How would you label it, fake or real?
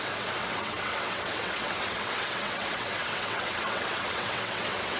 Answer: fake